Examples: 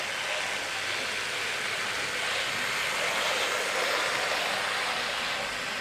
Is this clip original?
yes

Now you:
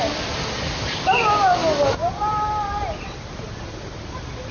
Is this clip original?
yes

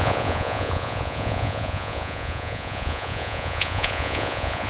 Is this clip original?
no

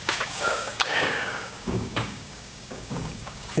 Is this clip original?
no